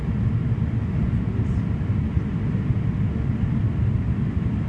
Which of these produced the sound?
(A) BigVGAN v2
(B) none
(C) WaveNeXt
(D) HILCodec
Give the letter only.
B